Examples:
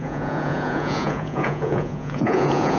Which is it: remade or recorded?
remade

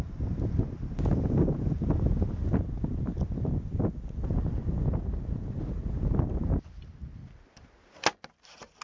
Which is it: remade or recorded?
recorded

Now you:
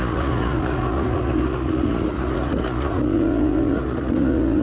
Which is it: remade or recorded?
remade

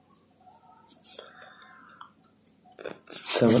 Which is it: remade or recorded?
recorded